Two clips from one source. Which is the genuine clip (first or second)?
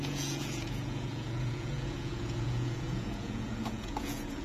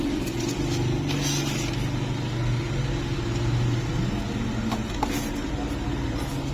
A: second